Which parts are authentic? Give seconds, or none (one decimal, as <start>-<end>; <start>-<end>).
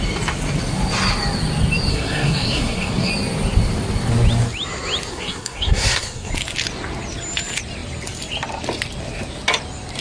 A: 0.0-1.9; 3.1-5.1; 6.3-10.0